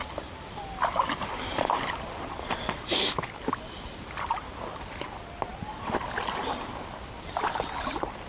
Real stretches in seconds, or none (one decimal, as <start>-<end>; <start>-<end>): 0.0-8.3